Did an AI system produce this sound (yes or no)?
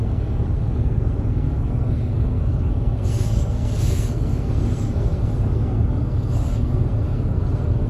yes